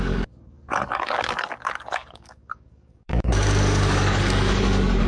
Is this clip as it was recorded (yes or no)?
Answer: no